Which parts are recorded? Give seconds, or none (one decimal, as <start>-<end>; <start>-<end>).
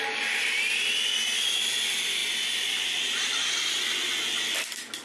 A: 0.0-5.0